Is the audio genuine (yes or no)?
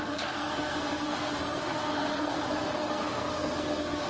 no